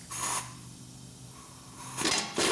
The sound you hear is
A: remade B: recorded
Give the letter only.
B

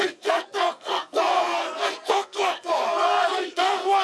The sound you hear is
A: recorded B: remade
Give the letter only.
B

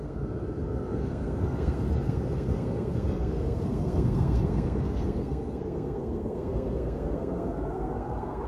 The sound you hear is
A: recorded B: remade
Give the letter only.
B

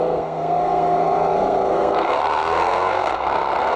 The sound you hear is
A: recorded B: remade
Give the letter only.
B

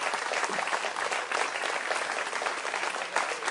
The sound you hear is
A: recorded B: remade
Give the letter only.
A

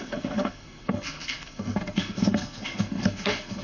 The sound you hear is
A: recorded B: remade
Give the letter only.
B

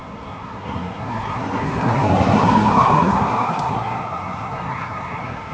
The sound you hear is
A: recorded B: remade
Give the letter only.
B